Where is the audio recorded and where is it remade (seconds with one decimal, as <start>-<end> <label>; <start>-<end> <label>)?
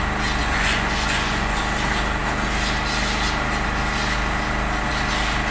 0.0-0.4 recorded; 0.4-1.6 remade; 1.6-5.5 recorded